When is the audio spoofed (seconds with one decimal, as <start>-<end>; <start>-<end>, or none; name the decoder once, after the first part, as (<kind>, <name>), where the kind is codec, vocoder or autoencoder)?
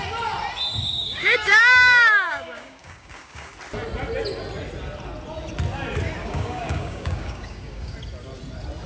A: 0.8-3.5 (codec, DAC); 6.2-7.9